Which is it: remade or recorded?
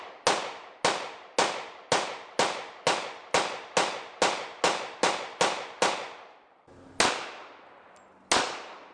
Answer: recorded